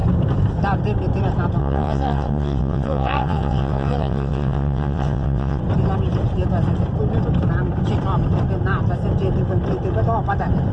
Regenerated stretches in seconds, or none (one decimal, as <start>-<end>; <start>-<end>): 1.6-5.6